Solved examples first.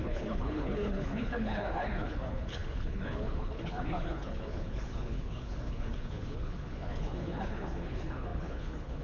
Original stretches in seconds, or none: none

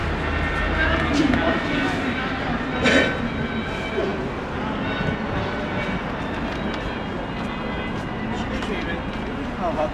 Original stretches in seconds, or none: 0.0-9.9